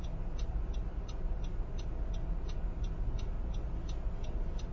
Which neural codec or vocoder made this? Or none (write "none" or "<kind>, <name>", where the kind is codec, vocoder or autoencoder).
none